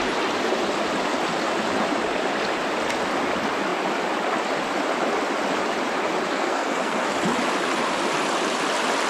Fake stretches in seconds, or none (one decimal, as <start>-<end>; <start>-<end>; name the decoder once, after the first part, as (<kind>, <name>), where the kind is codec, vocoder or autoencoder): 6.3-7.1 (codec, SNAC)

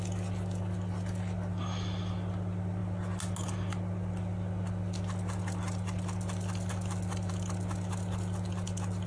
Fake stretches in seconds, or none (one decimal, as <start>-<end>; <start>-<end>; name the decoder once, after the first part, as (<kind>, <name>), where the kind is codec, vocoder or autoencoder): none

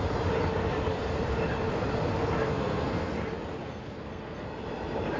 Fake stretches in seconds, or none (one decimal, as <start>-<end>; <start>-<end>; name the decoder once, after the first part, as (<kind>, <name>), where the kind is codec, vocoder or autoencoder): 2.5-3.1 (codec, SNAC); 3.6-4.5

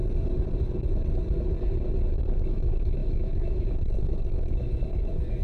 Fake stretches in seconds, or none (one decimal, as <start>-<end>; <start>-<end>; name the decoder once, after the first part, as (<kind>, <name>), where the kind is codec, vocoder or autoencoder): 2.1-5.4 (autoencoder, DAC-VAE)

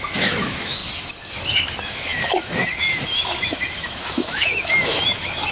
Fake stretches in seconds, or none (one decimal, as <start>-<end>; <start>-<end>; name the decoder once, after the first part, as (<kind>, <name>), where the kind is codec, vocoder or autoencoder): 0.0-5.5 (autoencoder, DAC-VAE)

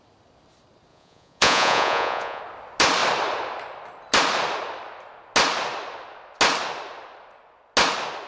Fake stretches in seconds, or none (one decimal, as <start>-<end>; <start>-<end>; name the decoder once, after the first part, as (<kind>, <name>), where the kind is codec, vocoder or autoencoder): 0.9-2.4 (vocoder, Vocos)

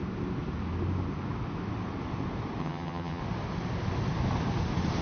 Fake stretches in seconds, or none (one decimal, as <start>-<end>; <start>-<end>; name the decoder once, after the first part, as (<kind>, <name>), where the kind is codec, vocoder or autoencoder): 2.6-3.2 (vocoder, HiFi-GAN)

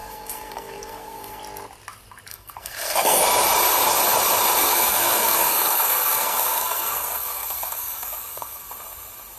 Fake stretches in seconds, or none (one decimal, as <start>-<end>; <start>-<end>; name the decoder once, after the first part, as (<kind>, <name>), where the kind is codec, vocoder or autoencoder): 0.0-1.4 (codec, SNAC); 2.3-3.2; 4.6-8.7